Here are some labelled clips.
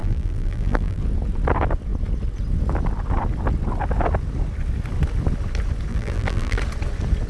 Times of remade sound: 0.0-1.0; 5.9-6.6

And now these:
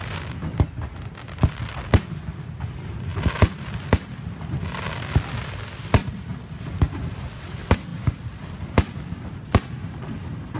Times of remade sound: 3.1-3.7; 7.9-9.7

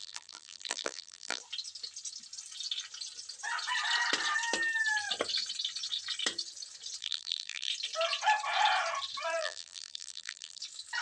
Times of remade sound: 0.0-1.4; 7.0-7.7; 9.4-10.6

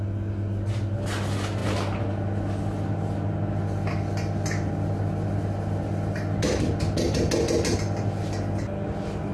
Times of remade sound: none

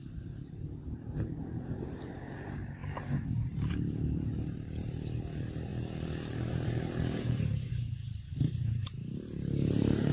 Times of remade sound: 0.0-2.8; 3.3-5.7; 6.3-10.1